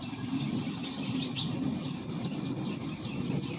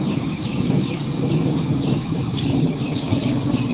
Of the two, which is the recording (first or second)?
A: first